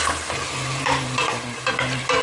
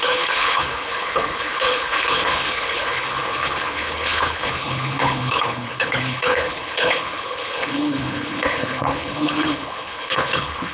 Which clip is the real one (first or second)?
first